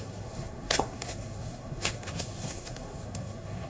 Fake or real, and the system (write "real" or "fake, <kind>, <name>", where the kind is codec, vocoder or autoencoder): fake, codec, SNAC